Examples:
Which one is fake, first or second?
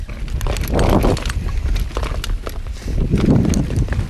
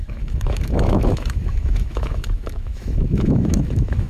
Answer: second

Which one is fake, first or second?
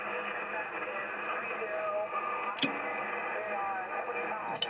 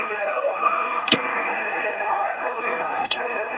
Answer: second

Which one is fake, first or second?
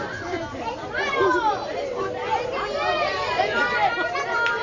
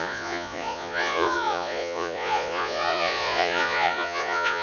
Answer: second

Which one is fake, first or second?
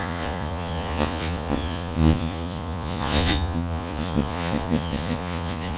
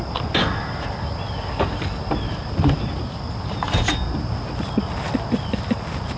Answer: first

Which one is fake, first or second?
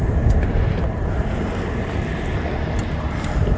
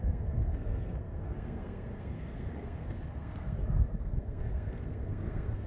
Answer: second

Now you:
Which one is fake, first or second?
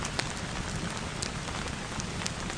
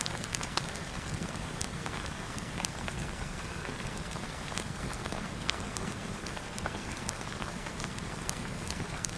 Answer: second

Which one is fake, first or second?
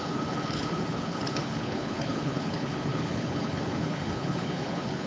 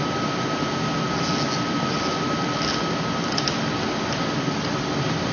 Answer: first